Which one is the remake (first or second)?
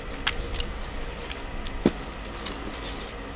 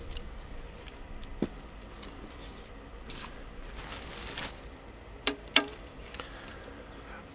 second